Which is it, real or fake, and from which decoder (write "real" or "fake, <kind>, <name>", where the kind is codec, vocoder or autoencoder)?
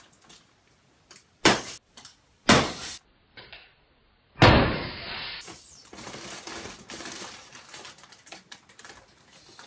real